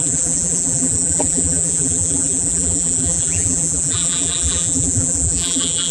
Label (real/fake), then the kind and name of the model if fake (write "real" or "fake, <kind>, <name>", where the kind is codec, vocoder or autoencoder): fake, vocoder, BigVGAN v2